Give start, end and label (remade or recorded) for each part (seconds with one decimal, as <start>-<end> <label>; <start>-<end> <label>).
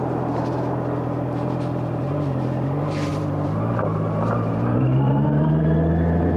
0.0-3.1 recorded; 3.1-5.6 remade; 5.6-6.4 recorded